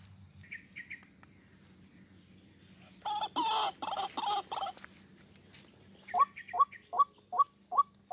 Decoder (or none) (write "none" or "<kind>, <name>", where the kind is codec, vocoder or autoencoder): none